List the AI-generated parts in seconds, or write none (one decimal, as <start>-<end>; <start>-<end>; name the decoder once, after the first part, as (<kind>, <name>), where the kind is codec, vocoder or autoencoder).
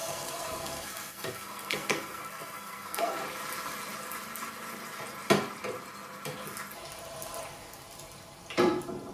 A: 0.0-3.2 (codec, SNAC)